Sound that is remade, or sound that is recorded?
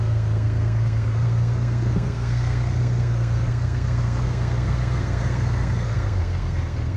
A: remade